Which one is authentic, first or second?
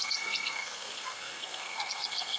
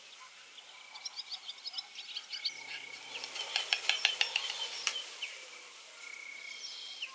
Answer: second